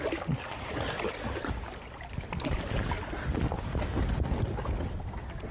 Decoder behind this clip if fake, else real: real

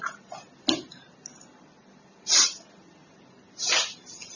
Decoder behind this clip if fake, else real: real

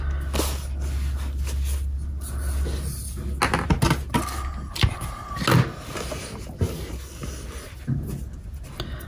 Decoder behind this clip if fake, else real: real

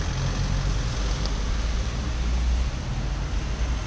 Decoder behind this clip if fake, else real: real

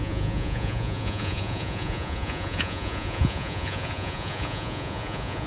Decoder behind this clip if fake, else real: fake, vocoder, Vocos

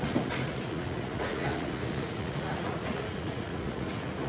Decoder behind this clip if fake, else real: fake, vocoder, Vocos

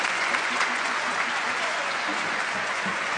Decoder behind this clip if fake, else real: fake, vocoder, Vocos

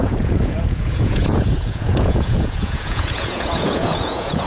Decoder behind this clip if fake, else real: fake, vocoder, Vocos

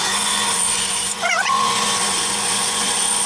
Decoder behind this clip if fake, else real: fake, vocoder, Vocos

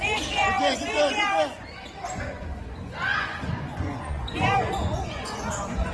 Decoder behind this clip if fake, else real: fake, vocoder, Vocos